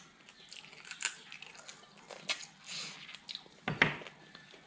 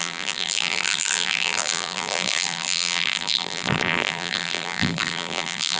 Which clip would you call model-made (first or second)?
second